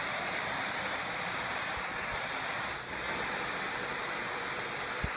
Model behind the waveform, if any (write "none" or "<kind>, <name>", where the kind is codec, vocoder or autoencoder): none